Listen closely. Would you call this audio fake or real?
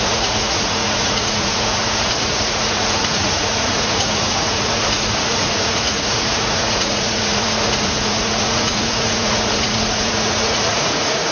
fake